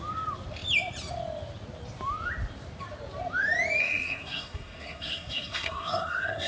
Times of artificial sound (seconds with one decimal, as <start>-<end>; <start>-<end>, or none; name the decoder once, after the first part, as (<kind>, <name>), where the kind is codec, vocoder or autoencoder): 3.8-6.5 (codec, SNAC)